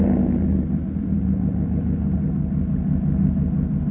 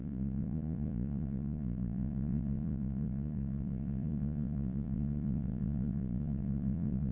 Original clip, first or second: first